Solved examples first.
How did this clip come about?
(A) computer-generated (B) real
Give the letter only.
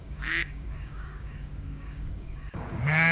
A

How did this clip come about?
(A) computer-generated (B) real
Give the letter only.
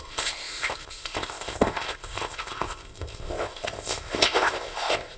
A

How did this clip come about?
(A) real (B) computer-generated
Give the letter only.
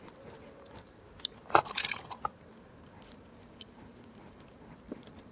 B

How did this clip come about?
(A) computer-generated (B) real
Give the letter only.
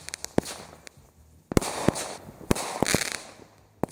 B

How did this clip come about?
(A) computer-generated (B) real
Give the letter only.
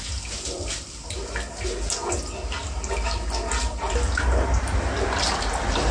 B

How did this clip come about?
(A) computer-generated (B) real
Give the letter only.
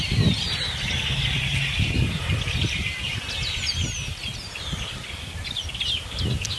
B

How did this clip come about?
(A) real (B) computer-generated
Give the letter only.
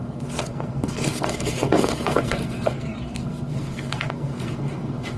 B